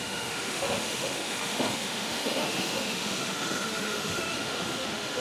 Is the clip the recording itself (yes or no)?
no